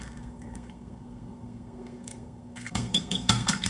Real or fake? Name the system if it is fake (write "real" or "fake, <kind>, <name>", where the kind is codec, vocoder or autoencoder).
fake, codec, SNAC